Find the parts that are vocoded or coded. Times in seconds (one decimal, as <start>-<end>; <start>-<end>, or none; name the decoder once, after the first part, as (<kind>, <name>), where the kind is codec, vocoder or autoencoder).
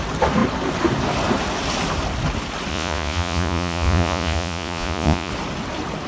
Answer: 2.7-5.3 (vocoder, Vocos)